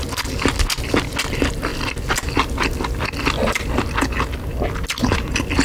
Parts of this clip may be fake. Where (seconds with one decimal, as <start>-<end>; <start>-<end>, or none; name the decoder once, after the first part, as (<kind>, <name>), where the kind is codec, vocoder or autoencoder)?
none